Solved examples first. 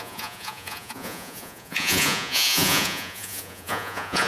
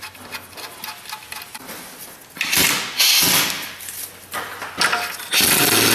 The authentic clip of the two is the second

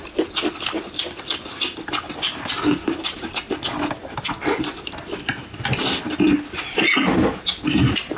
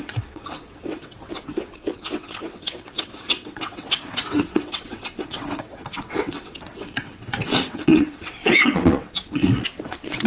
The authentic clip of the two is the first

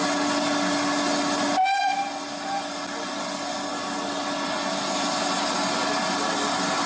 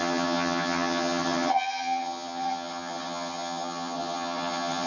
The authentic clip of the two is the first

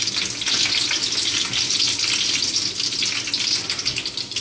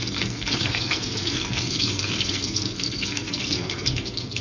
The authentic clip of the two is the first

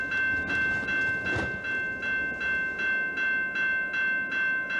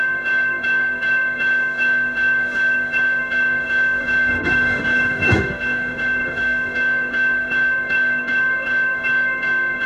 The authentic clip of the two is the first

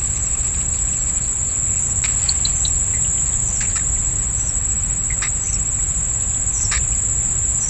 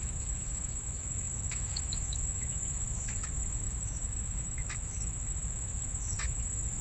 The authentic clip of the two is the first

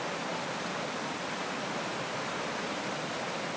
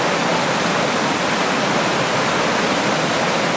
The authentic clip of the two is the second